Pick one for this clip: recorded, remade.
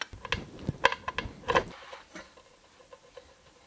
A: recorded